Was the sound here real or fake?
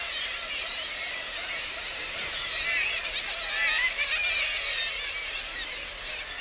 fake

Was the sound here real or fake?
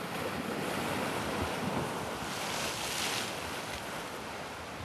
real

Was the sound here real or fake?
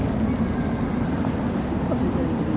real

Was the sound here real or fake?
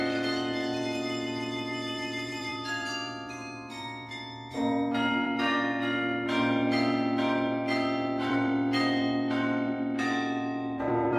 fake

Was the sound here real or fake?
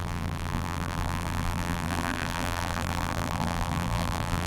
fake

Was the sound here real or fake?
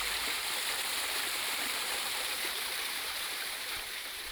fake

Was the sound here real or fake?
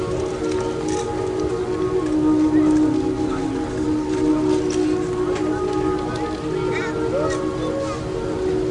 real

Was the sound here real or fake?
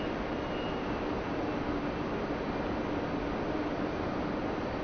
real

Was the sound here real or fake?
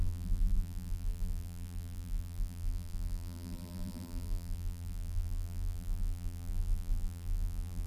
fake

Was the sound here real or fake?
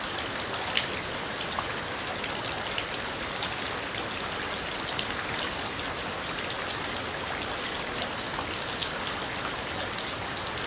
real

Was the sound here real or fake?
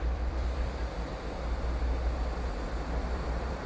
fake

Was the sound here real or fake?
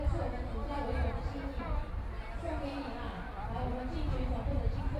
real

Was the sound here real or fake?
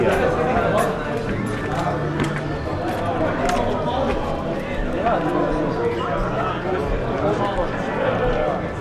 real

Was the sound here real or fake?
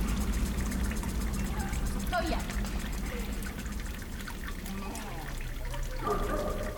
real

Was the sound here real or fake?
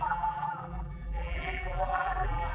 fake